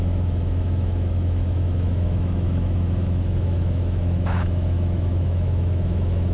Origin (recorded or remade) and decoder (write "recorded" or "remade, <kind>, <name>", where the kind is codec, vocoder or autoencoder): remade, autoencoder, DAC-VAE